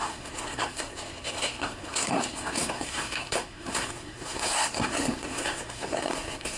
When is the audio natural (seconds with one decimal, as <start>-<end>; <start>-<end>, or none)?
none